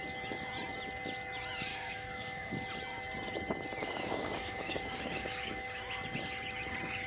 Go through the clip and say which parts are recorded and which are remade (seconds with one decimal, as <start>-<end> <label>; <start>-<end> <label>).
0.0-1.7 recorded; 1.7-2.5 remade; 2.5-3.8 recorded; 3.8-5.9 remade; 5.9-7.1 recorded